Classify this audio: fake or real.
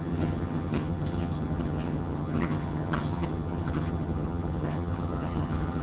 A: fake